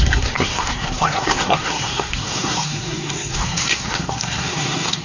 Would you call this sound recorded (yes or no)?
no